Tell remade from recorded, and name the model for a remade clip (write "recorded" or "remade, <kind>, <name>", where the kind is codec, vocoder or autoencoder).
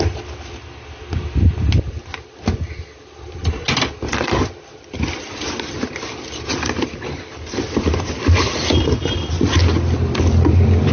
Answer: recorded